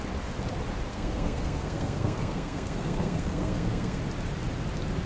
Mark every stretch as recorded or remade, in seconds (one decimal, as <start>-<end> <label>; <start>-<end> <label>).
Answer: 0.0-0.9 recorded; 0.9-4.0 remade; 4.0-5.1 recorded